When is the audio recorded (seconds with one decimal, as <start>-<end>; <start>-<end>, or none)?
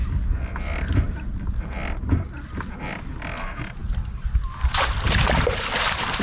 0.0-3.4; 3.8-4.4